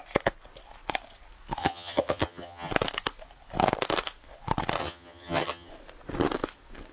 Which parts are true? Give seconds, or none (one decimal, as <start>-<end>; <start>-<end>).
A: 0.0-1.6; 2.7-4.8; 5.7-6.9